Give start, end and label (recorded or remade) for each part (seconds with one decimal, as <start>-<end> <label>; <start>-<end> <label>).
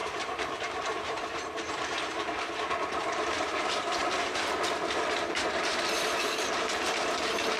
0.0-4.0 remade; 4.0-4.7 recorded; 4.7-7.6 remade